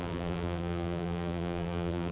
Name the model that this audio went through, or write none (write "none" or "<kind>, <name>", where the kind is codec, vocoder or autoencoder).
vocoder, BigVGAN v2